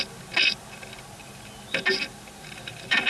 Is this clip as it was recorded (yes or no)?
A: yes